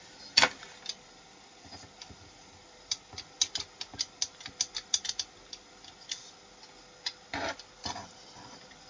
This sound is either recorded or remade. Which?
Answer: recorded